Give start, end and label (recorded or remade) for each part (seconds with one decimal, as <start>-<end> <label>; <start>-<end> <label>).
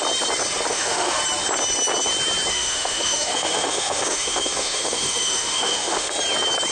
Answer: 0.0-0.7 recorded; 0.7-1.2 remade; 1.2-2.5 recorded; 2.5-6.1 remade; 6.1-6.7 recorded